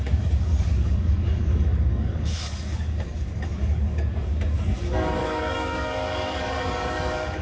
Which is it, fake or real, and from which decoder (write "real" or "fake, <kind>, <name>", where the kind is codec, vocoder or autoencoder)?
fake, codec, DAC